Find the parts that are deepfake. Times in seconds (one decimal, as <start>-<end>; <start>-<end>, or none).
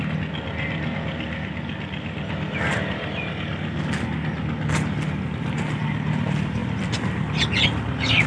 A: none